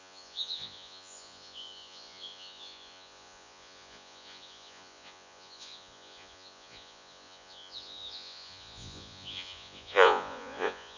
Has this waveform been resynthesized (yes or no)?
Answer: yes